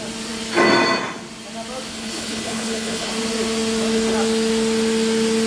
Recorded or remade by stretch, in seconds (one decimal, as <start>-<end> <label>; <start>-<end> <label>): 0.0-1.9 recorded; 1.9-3.1 remade; 3.1-5.5 recorded